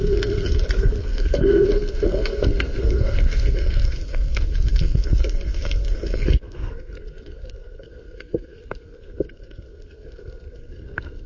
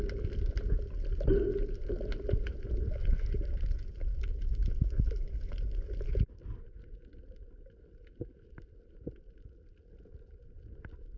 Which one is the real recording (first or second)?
second